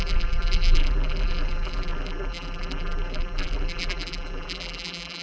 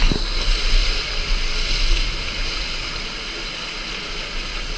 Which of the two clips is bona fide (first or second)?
second